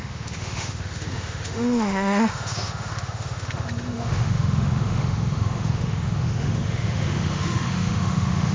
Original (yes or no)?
no